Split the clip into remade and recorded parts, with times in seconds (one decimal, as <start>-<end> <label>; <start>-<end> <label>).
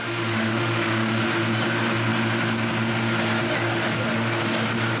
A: 0.0-1.2 remade; 1.2-5.0 recorded